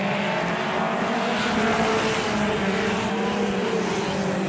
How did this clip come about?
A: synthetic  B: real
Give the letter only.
B